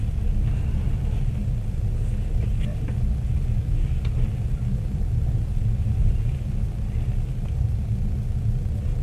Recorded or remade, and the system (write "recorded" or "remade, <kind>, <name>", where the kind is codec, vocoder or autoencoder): recorded